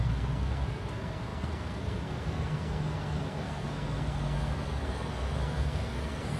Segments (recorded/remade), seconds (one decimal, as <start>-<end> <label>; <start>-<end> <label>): 0.0-6.4 remade